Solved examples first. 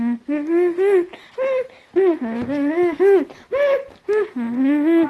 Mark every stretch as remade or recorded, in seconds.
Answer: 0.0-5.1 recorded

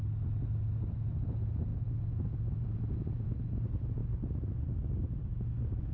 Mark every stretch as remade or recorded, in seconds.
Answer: 0.0-1.7 recorded; 1.7-2.9 remade; 2.9-5.9 recorded

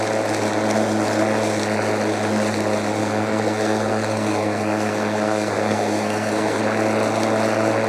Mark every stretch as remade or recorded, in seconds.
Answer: 0.0-3.0 recorded; 3.0-6.6 remade; 6.6-7.9 recorded

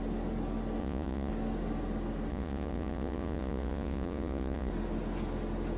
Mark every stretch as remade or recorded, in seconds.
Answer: 0.0-0.8 recorded; 0.8-1.3 remade; 1.3-2.3 recorded; 2.3-4.7 remade; 4.7-5.8 recorded

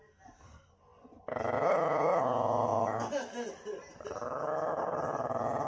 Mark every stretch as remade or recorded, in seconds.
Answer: 0.0-2.7 recorded; 2.7-4.4 remade; 4.4-5.7 recorded

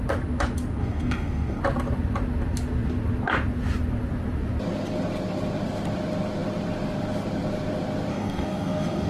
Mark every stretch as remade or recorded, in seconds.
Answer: 0.0-0.8 recorded; 0.8-1.6 remade; 1.6-8.1 recorded; 8.1-9.1 remade

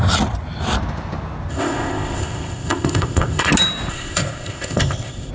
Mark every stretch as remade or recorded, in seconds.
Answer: 0.0-1.5 recorded; 1.5-3.5 remade; 3.5-3.9 recorded; 3.9-5.3 remade